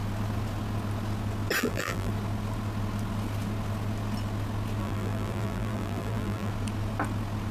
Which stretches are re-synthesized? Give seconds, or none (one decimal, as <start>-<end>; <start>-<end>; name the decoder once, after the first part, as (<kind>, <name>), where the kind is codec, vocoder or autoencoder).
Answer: 1.6-2.1 (vocoder, BigVGAN v2); 4.8-6.5